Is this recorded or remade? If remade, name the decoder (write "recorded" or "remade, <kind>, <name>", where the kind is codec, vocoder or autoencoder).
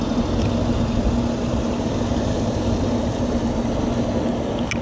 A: recorded